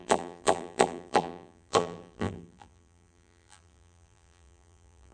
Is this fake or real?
fake